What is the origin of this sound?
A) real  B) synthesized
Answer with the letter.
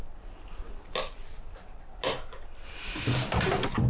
A